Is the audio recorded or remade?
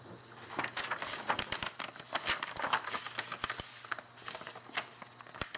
recorded